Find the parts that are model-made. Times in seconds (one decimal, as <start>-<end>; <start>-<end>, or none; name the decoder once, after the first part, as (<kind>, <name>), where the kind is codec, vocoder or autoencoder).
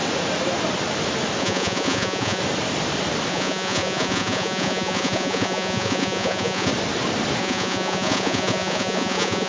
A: 1.4-2.4 (vocoder, Vocos); 3.3-6.7; 7.4-9.5